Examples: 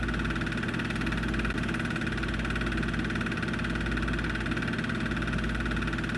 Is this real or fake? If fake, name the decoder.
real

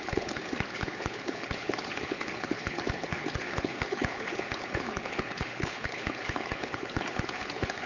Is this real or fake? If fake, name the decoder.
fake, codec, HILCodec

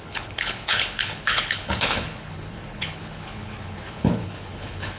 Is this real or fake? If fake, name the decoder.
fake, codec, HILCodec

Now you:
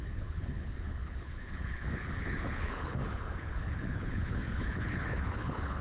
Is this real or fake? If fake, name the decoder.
fake, codec, HILCodec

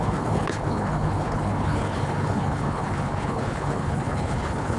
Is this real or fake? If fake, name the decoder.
fake, codec, HILCodec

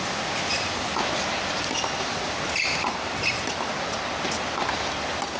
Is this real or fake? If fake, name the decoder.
real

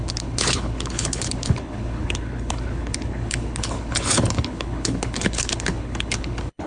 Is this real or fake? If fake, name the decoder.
fake, codec, HILCodec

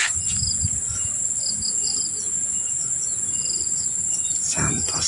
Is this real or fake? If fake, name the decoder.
real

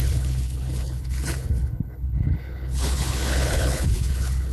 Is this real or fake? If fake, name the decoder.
fake, codec, HILCodec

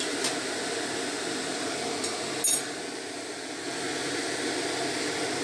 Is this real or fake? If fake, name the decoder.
real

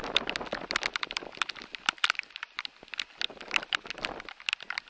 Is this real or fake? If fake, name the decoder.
real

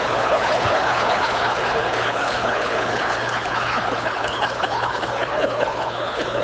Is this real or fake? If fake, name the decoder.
fake, codec, HILCodec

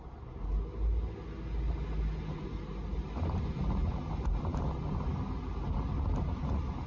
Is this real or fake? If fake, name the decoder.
real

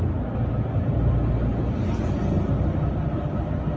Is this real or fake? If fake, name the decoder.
real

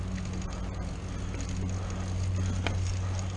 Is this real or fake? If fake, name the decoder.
real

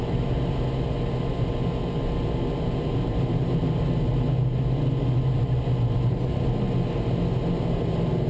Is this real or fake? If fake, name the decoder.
real